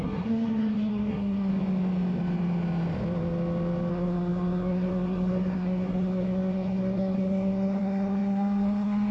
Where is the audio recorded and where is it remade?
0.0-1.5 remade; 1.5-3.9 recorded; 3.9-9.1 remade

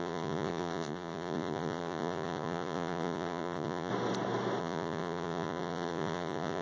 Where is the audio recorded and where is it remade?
0.0-3.9 remade; 3.9-4.6 recorded; 4.6-6.6 remade

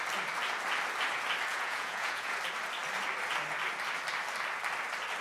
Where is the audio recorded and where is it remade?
0.0-1.5 recorded; 1.5-2.4 remade; 2.4-5.2 recorded